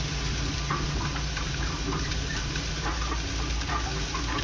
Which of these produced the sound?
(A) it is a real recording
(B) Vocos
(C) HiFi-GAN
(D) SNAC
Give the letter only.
A